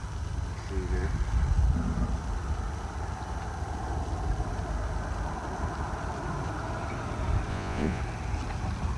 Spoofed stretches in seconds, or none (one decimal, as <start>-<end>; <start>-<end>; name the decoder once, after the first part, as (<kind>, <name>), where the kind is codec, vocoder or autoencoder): 7.5-8.0 (vocoder, Vocos)